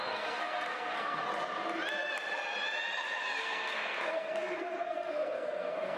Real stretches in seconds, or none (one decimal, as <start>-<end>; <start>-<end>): 1.3-3.4